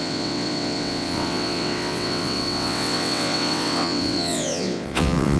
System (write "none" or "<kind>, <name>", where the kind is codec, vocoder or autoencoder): vocoder, WaveNeXt